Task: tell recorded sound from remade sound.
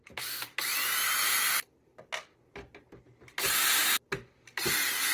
recorded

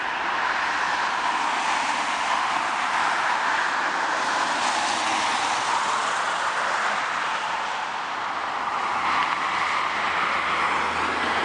recorded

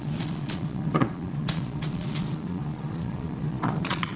remade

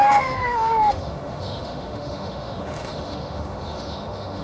remade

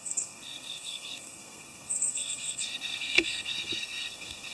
remade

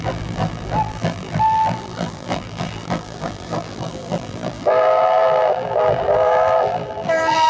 remade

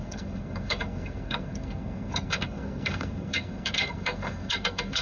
remade